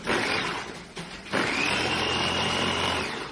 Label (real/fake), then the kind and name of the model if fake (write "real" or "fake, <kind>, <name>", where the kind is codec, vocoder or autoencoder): fake, vocoder, BigVGAN v2